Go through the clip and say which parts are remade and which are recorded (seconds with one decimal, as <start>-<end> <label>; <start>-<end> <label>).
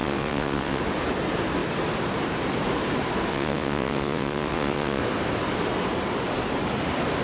0.0-0.8 remade; 0.8-3.3 recorded; 3.3-5.0 remade; 5.0-7.2 recorded